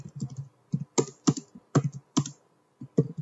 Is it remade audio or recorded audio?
recorded